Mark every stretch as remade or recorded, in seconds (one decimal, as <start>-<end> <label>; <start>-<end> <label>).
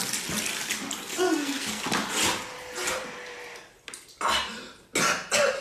0.0-1.1 recorded; 1.1-1.8 remade; 1.8-5.6 recorded